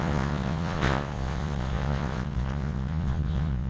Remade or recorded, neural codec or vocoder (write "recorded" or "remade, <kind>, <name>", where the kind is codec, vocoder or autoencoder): remade, vocoder, Vocos